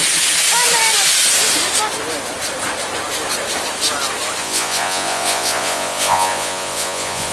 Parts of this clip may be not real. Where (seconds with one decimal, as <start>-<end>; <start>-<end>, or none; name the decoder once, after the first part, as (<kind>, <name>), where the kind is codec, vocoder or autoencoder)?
4.4-7.3 (vocoder, Vocos)